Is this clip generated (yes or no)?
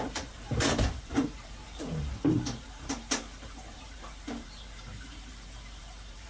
yes